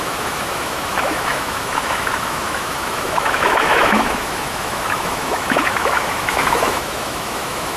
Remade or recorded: remade